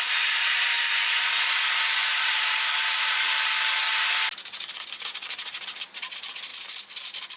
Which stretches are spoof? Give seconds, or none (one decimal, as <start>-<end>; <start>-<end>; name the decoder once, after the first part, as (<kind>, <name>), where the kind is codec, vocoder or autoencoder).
2.0-3.3 (vocoder, BigVGAN v2)